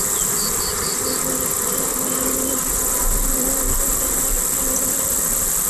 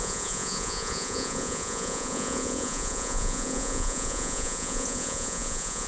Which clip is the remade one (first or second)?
second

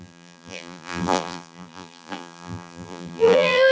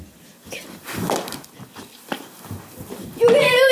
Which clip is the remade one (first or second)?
first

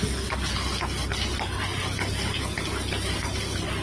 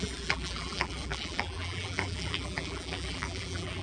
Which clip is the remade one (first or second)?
second